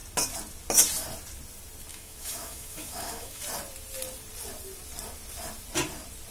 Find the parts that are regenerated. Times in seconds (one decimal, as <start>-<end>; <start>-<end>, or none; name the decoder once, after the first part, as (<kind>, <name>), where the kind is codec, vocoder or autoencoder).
1.9-3.4 (autoencoder, DAC-VAE)